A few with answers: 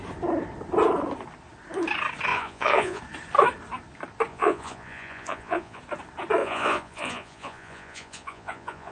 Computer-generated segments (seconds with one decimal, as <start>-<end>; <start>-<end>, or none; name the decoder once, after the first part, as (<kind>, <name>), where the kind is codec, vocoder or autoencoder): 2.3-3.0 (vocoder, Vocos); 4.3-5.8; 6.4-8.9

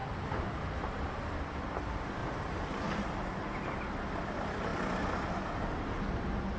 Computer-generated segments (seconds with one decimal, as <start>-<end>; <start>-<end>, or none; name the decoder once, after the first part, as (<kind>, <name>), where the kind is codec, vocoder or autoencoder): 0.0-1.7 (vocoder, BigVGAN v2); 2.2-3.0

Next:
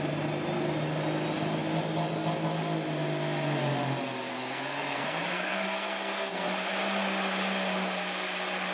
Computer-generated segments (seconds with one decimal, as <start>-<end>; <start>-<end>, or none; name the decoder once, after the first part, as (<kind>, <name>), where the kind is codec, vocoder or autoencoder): 4.3-6.5 (codec, SNAC)

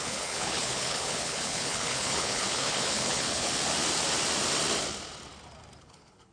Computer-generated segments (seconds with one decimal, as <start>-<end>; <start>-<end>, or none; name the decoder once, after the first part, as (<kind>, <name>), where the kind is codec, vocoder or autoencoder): 0.0-3.5 (codec, HILCodec); 5.8-6.3

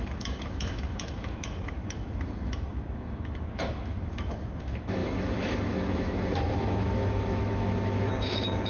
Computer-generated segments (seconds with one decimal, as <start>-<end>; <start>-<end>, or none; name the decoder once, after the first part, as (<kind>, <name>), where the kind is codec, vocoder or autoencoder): 0.0-8.7 (autoencoder, DAC-VAE)